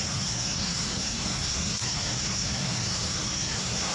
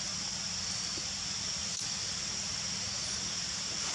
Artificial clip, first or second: first